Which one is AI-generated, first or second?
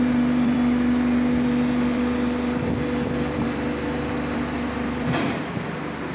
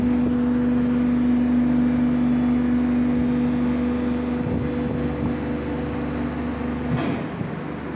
first